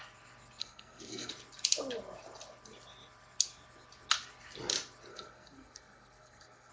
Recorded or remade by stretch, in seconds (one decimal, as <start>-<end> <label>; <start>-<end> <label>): 0.0-0.6 recorded; 0.6-1.3 remade; 1.3-5.1 recorded; 5.1-6.7 remade